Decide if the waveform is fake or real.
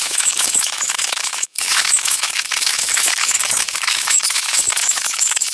fake